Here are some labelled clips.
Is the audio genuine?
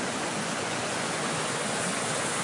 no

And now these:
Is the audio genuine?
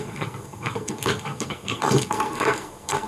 no